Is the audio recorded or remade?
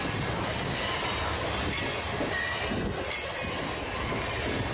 recorded